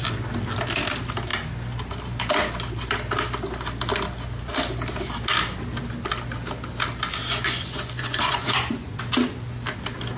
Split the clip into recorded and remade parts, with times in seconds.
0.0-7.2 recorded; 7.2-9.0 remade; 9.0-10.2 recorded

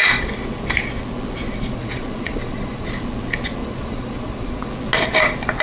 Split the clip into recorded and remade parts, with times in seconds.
0.0-1.5 recorded; 1.5-2.9 remade; 2.9-3.6 recorded; 3.6-4.7 remade; 4.7-5.6 recorded

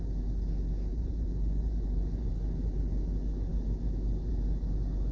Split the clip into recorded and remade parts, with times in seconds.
0.0-0.9 recorded; 0.9-2.3 remade; 2.3-5.1 recorded

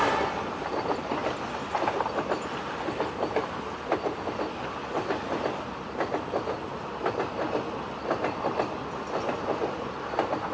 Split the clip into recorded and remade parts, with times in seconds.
0.0-10.5 recorded

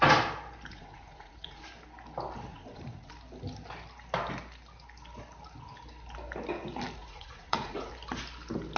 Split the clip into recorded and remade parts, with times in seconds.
0.0-0.7 recorded; 0.7-1.6 remade; 1.6-2.5 recorded; 2.5-3.1 remade; 3.1-7.0 recorded; 7.0-7.9 remade; 7.9-8.8 recorded

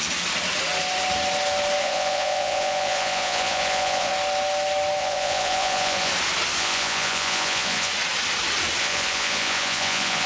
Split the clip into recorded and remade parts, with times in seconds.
0.0-1.8 recorded; 1.8-4.1 remade; 4.1-5.0 recorded; 5.0-6.1 remade; 6.1-6.6 recorded; 6.6-7.9 remade; 7.9-8.8 recorded; 8.8-10.3 remade

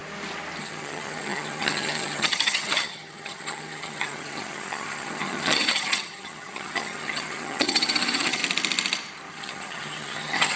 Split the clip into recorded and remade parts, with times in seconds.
0.0-0.6 recorded; 0.6-8.4 remade; 8.4-9.3 recorded; 9.3-10.6 remade